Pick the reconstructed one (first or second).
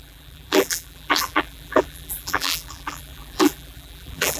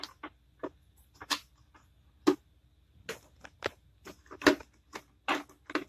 first